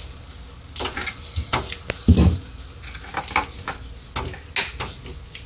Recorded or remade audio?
recorded